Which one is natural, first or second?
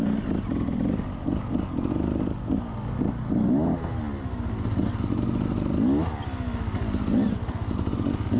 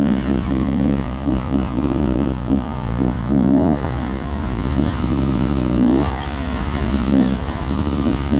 first